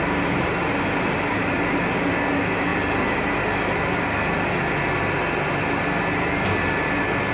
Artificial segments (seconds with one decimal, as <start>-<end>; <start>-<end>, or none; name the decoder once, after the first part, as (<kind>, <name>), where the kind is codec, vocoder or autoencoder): none